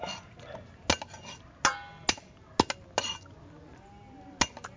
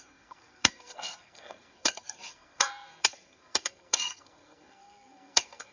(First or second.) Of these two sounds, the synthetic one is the second